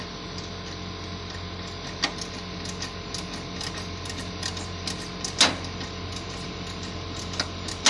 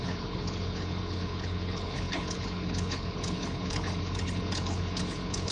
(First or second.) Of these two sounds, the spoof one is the second